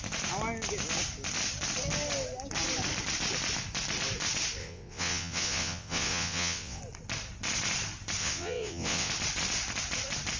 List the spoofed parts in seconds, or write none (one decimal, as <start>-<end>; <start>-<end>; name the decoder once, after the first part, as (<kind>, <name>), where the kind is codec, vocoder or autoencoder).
4.6-6.8 (vocoder, WaveNeXt); 8.2-9.1